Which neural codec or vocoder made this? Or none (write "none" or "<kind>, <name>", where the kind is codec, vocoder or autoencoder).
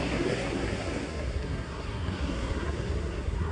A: codec, SNAC